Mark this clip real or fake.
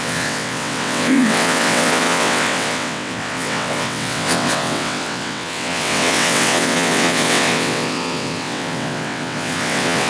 fake